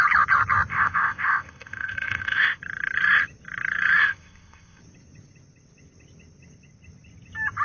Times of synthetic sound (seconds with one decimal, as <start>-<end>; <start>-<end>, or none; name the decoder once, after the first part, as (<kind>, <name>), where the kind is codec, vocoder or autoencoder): 0.7-2.6 (codec, ZipCodec); 4.0-4.8